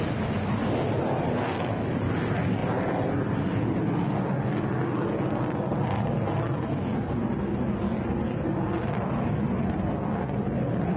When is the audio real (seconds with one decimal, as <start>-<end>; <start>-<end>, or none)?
0.0-11.0